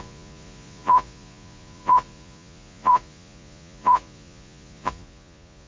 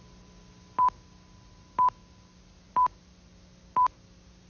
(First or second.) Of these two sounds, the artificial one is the first